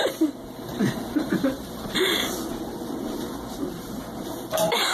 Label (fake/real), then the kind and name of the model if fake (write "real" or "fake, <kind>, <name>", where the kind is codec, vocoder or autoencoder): fake, vocoder, BigVGAN v2